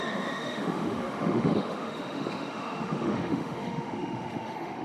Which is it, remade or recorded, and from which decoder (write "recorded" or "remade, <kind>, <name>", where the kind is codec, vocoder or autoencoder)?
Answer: remade, autoencoder, DAC-VAE